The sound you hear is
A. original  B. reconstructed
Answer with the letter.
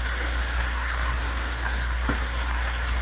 B